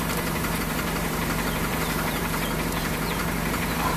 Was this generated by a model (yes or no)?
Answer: yes